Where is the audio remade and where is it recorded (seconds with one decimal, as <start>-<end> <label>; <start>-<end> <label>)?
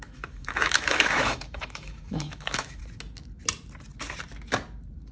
0.0-2.8 remade; 2.8-5.1 recorded